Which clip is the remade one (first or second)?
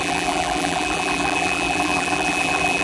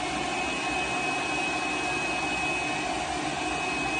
first